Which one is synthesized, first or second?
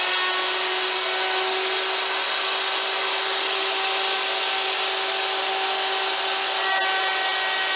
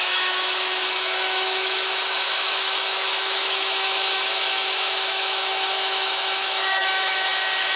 second